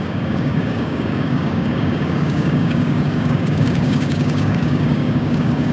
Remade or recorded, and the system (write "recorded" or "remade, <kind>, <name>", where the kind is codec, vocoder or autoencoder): remade, codec, DAC